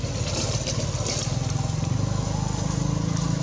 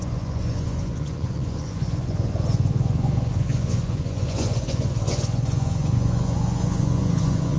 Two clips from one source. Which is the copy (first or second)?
second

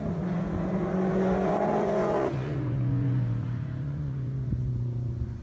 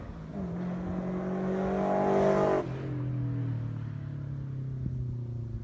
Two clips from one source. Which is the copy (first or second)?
first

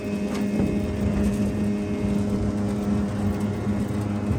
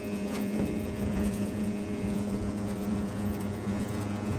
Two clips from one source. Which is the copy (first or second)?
second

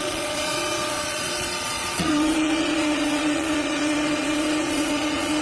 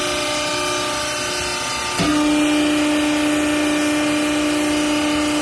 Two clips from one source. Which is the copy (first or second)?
first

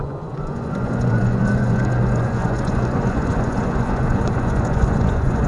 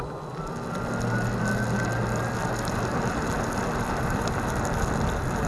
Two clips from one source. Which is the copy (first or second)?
first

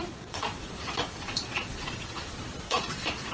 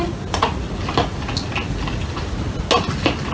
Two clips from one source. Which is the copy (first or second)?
first